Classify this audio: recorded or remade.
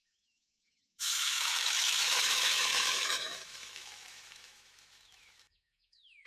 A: remade